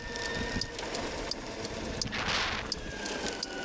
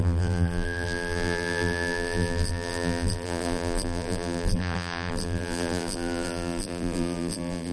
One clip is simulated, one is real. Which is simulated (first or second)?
second